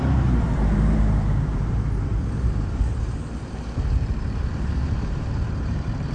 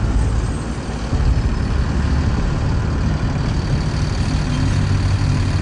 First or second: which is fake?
first